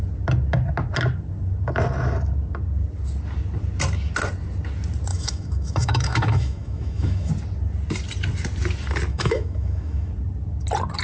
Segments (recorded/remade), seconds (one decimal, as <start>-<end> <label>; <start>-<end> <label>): 0.0-5.1 recorded; 5.1-7.3 remade; 7.3-9.1 recorded; 9.1-10.1 remade; 10.1-11.0 recorded